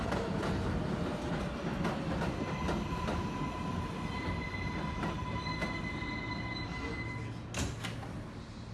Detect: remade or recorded recorded